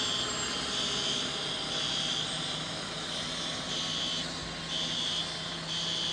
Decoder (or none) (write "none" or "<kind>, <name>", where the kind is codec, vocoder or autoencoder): none